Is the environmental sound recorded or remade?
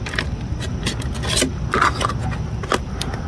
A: recorded